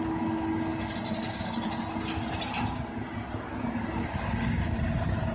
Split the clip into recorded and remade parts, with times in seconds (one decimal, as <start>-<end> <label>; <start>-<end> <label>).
0.0-5.3 recorded